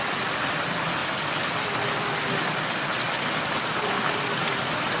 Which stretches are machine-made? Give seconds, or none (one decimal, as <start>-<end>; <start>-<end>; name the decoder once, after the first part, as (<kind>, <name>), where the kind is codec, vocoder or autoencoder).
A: none